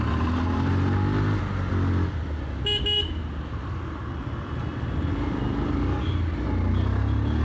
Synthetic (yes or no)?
no